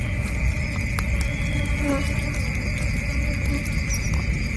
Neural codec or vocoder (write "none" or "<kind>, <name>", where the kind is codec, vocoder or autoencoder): none